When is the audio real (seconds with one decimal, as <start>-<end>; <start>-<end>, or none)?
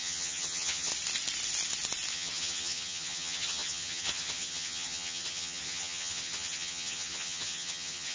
0.9-2.1